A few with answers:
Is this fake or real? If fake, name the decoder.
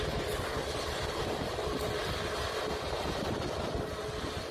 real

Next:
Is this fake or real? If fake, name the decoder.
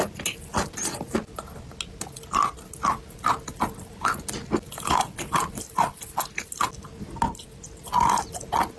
real